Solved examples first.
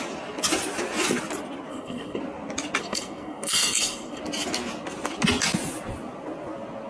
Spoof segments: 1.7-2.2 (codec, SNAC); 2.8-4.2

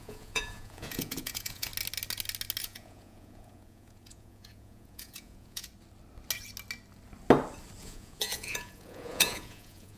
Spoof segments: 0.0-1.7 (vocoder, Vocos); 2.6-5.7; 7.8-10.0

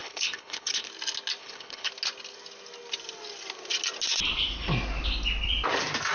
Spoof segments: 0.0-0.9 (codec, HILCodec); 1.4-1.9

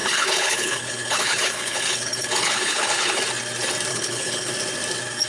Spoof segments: 0.0-3.2 (codec, HILCodec); 3.9-4.5